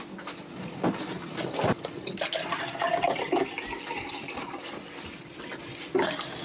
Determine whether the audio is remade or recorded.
recorded